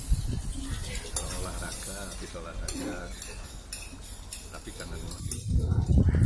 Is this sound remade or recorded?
recorded